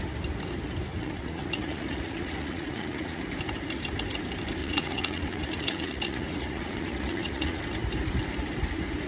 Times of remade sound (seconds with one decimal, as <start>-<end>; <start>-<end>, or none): 0.9-3.2; 4.6-7.6